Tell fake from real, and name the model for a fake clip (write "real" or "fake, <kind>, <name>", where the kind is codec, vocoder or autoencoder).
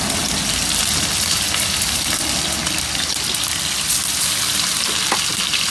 real